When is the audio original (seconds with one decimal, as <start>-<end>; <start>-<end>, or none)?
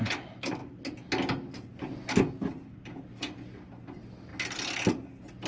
0.0-5.5